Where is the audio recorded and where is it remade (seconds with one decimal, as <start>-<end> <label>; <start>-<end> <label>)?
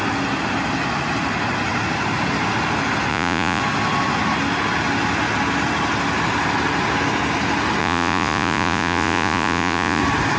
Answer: 0.0-3.1 recorded; 3.1-3.6 remade; 3.6-7.8 recorded; 7.8-10.0 remade; 10.0-10.4 recorded